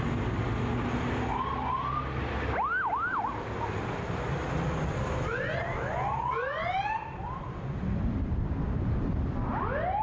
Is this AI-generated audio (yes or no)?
no